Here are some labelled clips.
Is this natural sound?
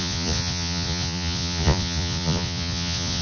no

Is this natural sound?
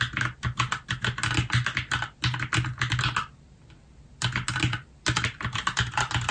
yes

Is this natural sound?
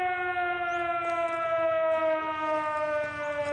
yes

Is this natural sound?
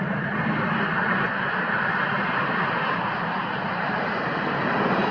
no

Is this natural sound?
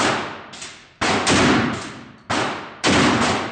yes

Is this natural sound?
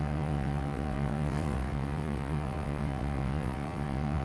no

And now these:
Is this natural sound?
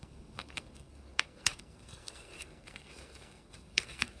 no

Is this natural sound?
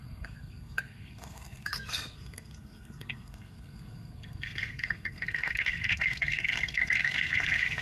no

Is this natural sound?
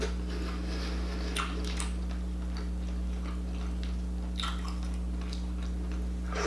yes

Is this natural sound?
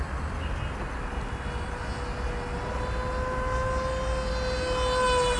yes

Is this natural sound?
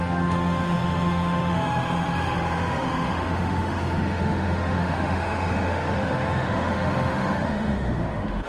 no